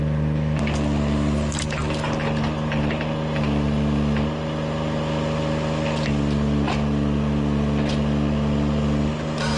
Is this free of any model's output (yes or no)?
yes